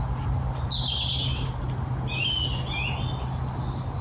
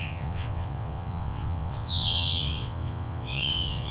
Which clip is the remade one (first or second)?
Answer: second